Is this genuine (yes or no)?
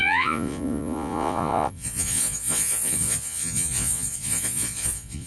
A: no